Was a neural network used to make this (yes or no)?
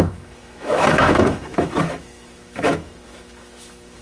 yes